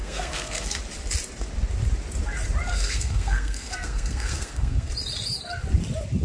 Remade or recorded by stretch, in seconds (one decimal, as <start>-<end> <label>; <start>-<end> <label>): 0.0-0.8 remade; 0.8-2.7 recorded; 2.7-4.9 remade; 4.9-6.2 recorded